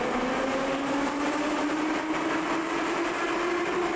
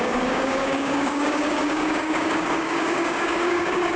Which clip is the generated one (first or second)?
second